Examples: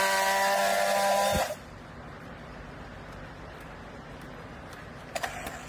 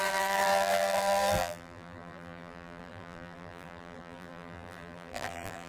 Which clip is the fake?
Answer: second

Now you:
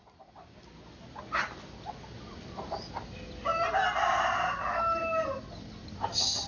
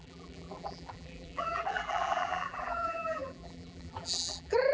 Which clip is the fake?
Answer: second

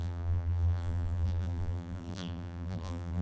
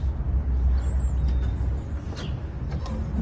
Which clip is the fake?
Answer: first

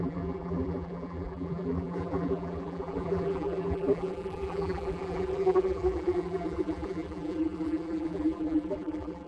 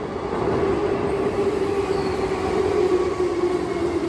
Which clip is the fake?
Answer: first